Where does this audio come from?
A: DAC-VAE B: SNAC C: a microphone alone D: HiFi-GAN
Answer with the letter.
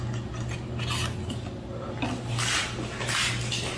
C